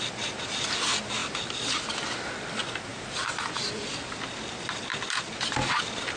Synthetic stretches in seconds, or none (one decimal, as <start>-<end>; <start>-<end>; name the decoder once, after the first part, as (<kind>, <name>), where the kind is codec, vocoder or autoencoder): 2.9-3.5 (vocoder, BigVGAN v2)